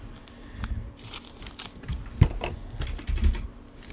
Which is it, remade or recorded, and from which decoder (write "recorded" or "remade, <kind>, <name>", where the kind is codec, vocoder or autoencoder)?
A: recorded